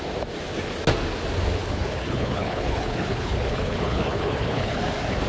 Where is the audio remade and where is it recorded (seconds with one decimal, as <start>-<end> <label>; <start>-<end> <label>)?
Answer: 0.0-1.6 recorded; 1.6-4.8 remade; 4.8-5.3 recorded